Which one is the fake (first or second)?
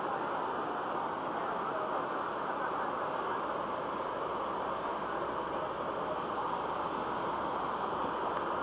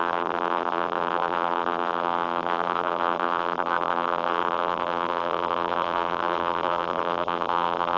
second